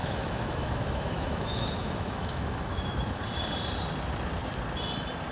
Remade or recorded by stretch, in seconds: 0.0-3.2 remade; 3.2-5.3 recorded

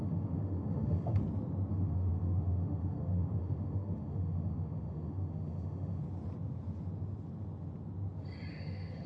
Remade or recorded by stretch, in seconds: 0.0-1.2 remade; 1.2-1.7 recorded; 1.7-6.0 remade; 6.0-8.5 recorded; 8.5-9.1 remade